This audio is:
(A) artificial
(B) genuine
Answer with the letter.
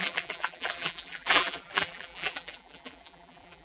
A